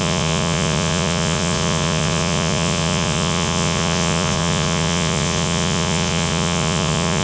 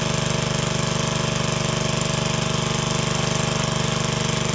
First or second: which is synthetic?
first